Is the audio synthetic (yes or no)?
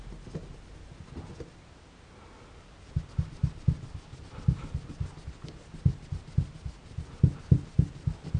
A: no